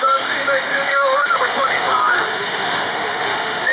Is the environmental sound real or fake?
fake